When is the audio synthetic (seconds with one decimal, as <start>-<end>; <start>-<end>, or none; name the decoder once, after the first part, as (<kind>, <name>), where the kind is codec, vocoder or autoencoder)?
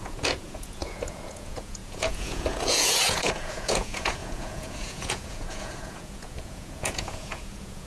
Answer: 0.0-7.9 (vocoder, Vocos)